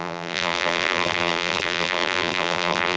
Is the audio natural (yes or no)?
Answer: no